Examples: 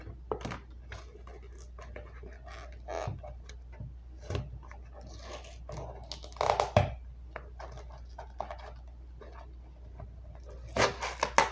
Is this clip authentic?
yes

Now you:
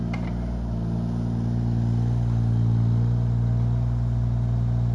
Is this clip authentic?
yes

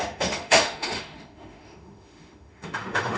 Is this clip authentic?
no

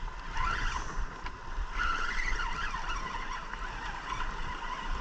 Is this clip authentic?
yes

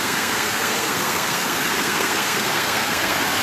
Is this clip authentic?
no